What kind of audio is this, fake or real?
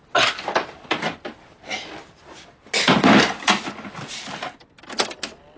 real